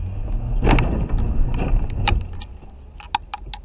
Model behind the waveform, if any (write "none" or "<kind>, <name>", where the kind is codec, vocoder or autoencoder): none